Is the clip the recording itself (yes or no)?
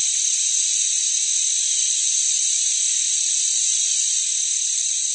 yes